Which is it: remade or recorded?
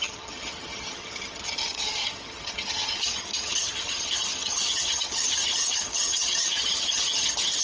remade